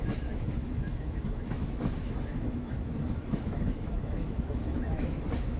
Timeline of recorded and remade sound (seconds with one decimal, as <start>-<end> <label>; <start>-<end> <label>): 0.0-5.6 remade